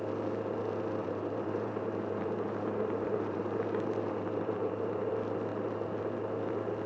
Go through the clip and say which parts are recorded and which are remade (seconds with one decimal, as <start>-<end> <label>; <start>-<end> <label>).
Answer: 0.0-1.0 recorded; 1.0-5.1 remade; 5.1-6.9 recorded